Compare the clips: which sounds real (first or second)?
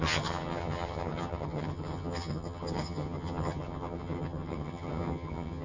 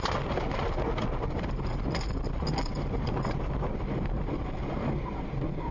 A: second